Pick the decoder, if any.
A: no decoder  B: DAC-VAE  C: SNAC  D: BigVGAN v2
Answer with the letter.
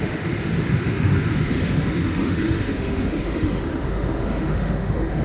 B